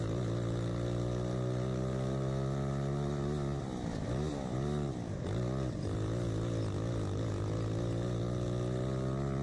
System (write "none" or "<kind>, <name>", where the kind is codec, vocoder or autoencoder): none